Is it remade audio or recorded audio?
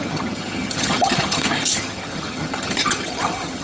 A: remade